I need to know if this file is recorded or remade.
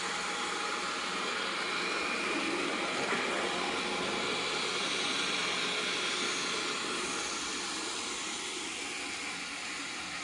recorded